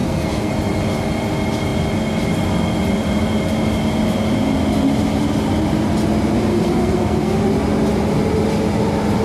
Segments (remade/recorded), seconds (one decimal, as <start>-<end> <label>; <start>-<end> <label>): 0.0-0.5 remade; 0.5-6.5 recorded; 6.5-7.4 remade; 7.4-9.2 recorded